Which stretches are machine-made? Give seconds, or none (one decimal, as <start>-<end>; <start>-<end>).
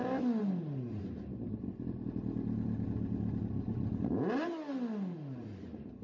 none